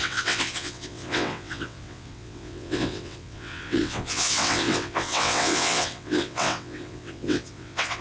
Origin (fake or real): fake